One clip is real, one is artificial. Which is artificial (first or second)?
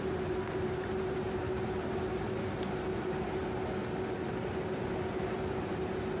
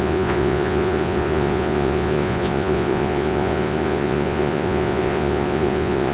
second